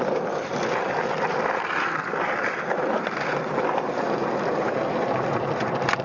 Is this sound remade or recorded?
remade